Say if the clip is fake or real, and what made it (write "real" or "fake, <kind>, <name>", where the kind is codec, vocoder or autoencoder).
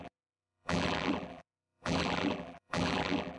fake, vocoder, BigVGAN v2